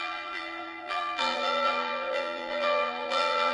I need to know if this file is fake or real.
fake